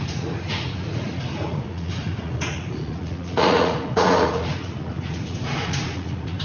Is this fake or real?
fake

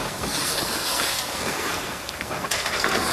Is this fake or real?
fake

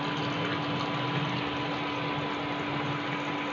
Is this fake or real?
real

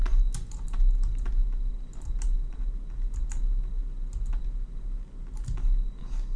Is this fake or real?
real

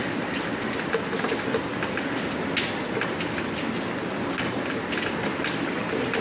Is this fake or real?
real